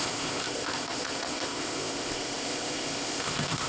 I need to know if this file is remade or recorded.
remade